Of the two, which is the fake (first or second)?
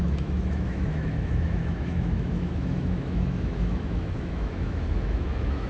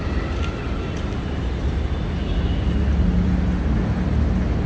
first